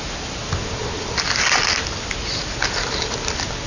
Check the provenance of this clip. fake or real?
real